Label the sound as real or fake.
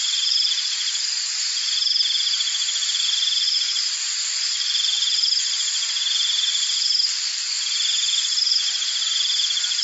fake